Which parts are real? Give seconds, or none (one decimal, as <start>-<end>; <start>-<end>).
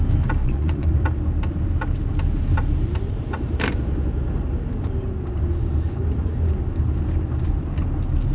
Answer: 0.0-0.4; 0.9-8.3